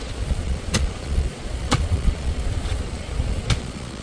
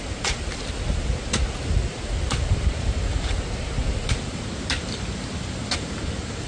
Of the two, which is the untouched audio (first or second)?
second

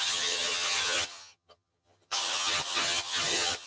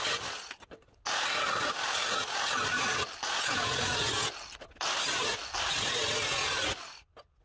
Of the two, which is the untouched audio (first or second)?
second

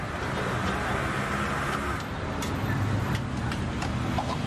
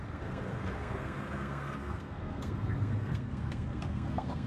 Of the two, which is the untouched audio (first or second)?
first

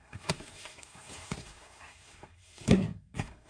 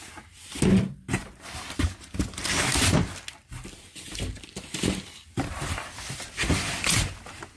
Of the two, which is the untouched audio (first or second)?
second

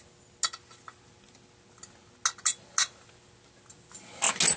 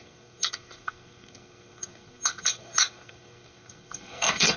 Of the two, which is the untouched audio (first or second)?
first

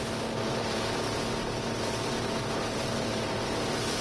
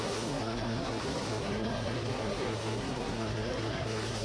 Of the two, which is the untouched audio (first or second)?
first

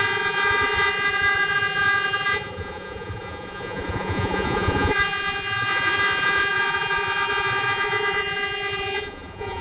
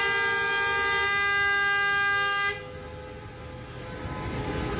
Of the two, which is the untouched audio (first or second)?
second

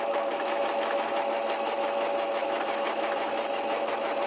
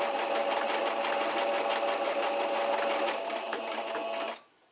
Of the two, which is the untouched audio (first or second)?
second